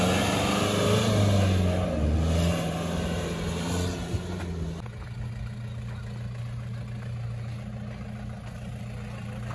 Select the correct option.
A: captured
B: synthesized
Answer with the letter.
A